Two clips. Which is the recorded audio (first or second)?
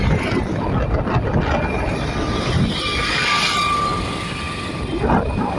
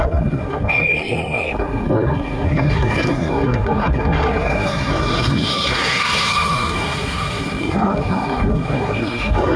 first